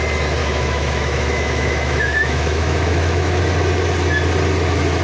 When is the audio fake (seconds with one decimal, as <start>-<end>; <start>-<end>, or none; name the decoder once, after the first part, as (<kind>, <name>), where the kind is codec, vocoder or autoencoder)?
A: 0.4-3.4 (autoencoder, DAC-VAE)